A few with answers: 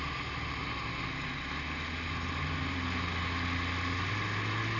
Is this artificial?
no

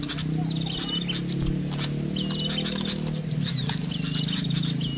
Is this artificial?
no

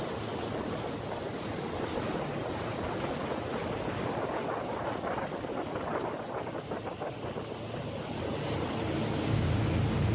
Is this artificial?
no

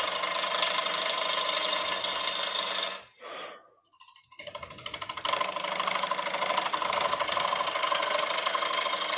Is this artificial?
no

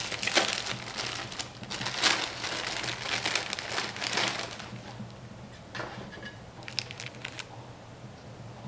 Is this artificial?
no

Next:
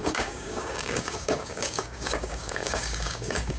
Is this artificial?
yes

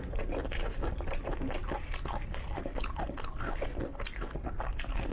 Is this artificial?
no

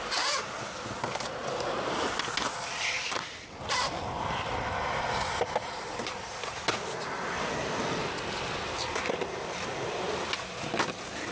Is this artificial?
no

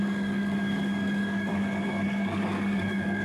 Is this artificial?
yes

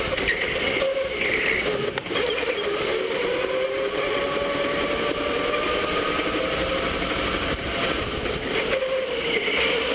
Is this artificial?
no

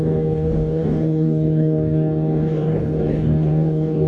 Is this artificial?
yes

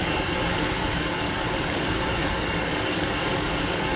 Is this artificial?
yes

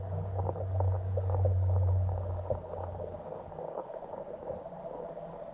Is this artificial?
yes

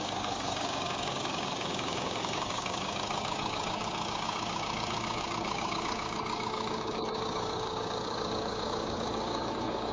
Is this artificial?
yes